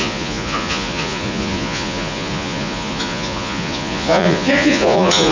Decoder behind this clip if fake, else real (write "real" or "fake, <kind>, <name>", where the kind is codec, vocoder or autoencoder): fake, vocoder, Vocos